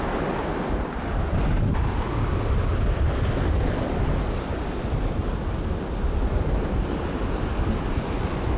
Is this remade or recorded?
recorded